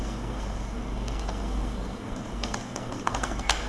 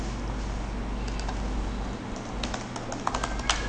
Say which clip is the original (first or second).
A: second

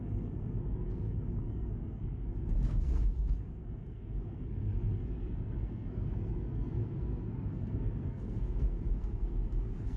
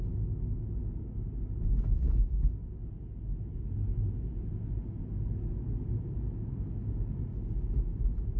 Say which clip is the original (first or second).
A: second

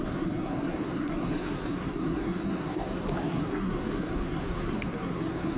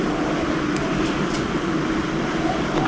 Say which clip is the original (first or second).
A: second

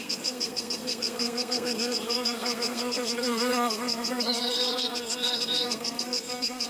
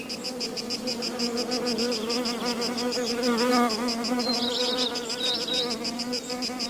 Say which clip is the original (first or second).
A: second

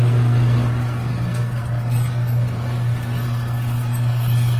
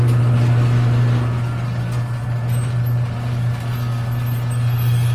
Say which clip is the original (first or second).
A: second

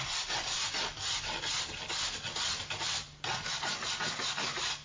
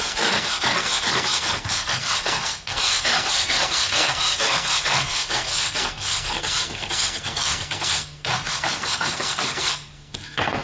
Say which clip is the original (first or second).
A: first